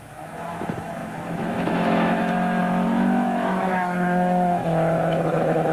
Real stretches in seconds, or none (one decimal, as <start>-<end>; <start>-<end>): none